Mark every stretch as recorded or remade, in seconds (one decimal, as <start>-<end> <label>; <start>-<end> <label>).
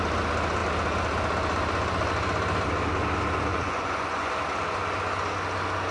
0.0-3.5 recorded; 3.5-4.3 remade; 4.3-5.9 recorded